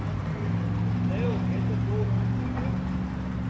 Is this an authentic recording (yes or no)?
yes